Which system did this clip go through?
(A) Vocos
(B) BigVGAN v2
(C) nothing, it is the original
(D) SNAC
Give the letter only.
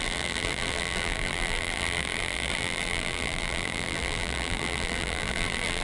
B